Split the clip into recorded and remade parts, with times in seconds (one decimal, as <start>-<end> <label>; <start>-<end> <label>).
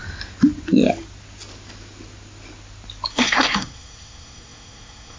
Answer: 0.0-3.1 recorded; 3.1-5.2 remade